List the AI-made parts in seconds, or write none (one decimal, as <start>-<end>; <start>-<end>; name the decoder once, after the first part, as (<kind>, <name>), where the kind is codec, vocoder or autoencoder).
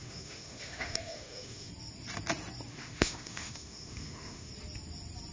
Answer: 0.0-1.7 (autoencoder, DAC-VAE); 2.7-4.5